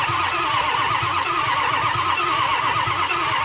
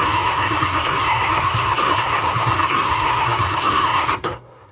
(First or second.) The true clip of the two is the first